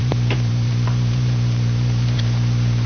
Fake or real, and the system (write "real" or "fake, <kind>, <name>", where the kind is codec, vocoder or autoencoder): fake, vocoder, BigVGAN v2